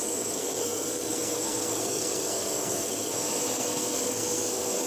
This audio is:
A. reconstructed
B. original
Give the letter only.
A